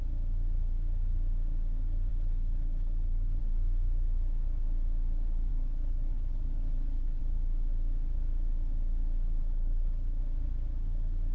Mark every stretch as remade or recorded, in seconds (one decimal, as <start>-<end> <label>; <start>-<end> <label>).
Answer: 0.0-2.1 recorded; 2.1-3.4 remade; 3.4-5.5 recorded; 5.5-7.2 remade; 7.2-9.4 recorded; 9.4-10.2 remade; 10.2-11.3 recorded